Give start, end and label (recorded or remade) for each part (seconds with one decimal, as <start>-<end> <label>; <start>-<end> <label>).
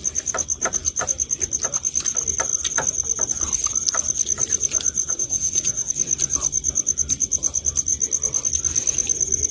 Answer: 0.0-5.0 recorded; 5.0-5.9 remade; 5.9-9.5 recorded